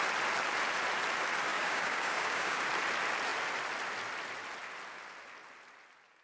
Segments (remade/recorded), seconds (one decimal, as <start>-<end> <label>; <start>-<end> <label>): 0.0-1.5 recorded; 1.5-2.6 remade; 2.6-6.2 recorded